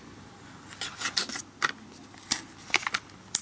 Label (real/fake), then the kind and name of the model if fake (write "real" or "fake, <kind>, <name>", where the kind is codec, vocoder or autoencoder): real